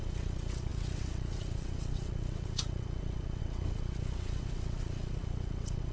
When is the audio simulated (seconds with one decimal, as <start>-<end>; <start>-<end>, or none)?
0.0-5.9